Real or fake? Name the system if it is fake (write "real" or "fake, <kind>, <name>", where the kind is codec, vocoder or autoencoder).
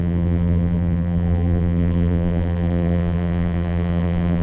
fake, vocoder, BigVGAN v2